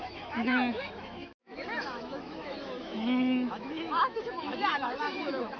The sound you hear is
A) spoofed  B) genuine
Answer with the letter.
A